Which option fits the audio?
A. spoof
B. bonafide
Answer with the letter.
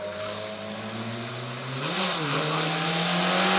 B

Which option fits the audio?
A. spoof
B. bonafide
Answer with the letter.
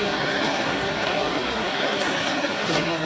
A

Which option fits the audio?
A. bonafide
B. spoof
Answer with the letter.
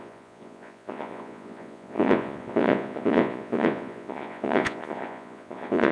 B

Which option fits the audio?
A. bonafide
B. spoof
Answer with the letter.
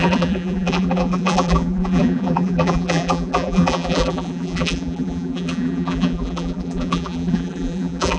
B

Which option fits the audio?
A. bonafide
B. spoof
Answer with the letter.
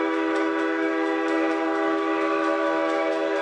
B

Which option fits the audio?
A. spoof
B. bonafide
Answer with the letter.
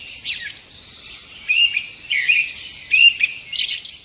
B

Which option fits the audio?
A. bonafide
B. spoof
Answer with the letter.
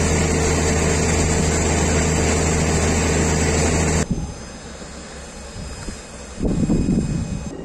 A